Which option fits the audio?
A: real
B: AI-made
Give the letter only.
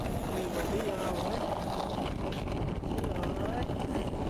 A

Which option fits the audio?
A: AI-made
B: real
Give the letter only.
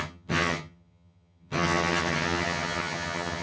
A